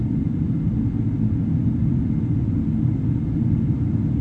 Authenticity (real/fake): real